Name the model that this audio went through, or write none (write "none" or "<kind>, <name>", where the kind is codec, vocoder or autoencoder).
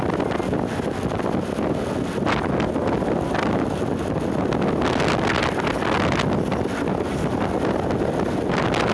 none